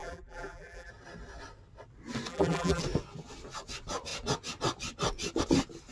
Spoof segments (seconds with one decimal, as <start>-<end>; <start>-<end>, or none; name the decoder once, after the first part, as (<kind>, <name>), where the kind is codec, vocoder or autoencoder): 0.0-0.9 (vocoder, BigVGAN v2); 2.3-2.8

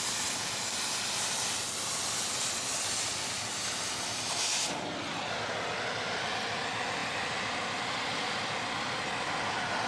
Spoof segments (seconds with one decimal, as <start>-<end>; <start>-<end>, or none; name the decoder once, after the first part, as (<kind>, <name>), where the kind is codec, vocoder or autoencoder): none